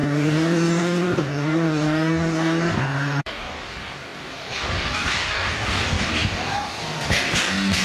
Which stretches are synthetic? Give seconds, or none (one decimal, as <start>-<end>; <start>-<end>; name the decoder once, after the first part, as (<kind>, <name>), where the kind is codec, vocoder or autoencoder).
0.0-7.8 (codec, DAC)